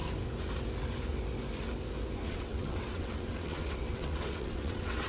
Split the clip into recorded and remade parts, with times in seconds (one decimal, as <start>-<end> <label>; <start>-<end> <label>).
0.0-2.2 recorded; 2.2-5.1 remade